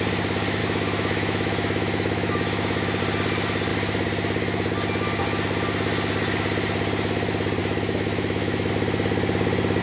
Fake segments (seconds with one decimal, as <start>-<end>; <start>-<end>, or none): 0.6-3.0; 7.6-8.7